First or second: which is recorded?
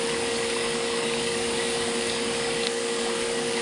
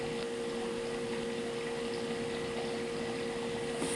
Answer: second